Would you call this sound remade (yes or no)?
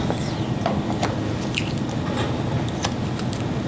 no